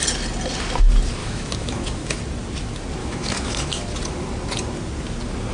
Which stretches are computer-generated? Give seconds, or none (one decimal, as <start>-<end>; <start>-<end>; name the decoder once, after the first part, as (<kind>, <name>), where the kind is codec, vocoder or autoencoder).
1.2-2.2 (autoencoder, DAC-VAE); 3.0-3.8